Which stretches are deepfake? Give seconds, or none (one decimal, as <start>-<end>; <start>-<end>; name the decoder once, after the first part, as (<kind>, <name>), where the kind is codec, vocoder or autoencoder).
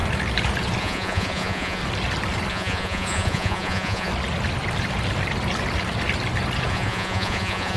0.8-1.8 (vocoder, Vocos); 2.5-4.1; 6.7-7.8